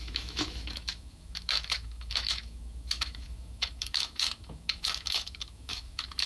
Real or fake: fake